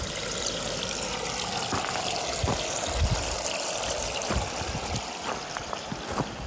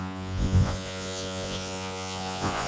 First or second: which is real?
first